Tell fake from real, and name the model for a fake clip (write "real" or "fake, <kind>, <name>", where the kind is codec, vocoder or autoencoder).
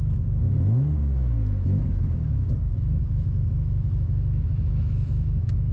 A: fake, autoencoder, DAC-VAE